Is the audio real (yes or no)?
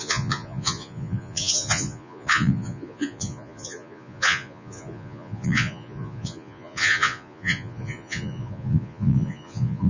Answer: no